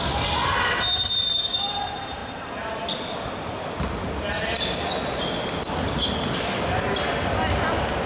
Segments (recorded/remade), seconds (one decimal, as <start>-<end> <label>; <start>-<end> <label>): 0.0-8.1 recorded